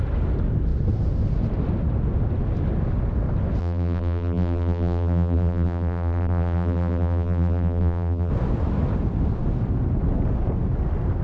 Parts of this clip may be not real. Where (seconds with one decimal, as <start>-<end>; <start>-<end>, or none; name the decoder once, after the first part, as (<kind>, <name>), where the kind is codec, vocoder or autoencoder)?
3.6-8.3 (vocoder, BigVGAN v2)